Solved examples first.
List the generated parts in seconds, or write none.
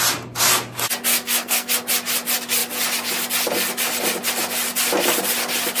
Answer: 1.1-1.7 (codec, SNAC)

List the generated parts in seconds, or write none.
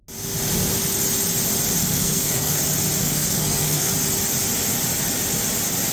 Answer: 1.8-2.6 (codec, SNAC); 3.0-3.9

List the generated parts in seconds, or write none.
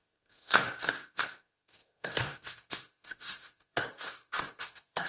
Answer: 0.0-5.1 (codec, SNAC)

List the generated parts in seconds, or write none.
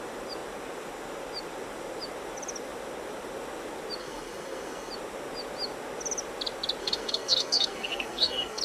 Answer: 4.0-4.9 (codec, SNAC); 6.8-8.6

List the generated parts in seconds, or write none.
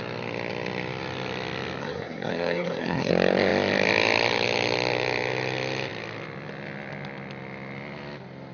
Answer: 1.8-3.1 (codec, SNAC)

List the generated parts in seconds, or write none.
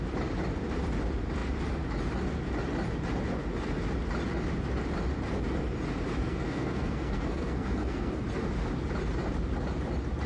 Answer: 6.2-8.1 (codec, SNAC)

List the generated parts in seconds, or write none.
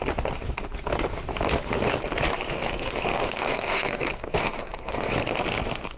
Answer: 2.5-5.1 (codec, SNAC)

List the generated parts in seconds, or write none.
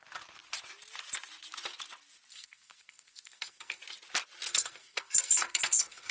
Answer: 2.3-3.8 (codec, SNAC); 4.5-6.1